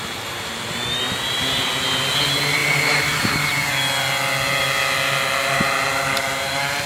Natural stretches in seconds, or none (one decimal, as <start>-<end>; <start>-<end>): 0.0-2.6; 3.7-6.9